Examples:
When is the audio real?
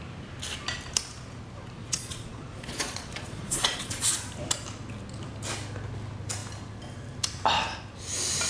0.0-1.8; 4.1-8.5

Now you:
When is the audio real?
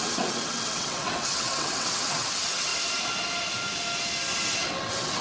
2.7-4.6